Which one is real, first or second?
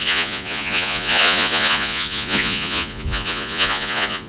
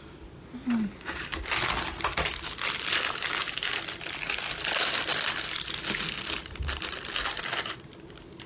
second